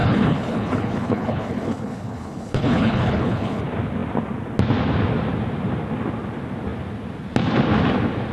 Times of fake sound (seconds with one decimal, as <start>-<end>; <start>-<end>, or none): 0.0-3.6